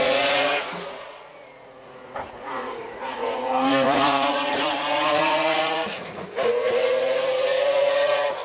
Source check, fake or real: fake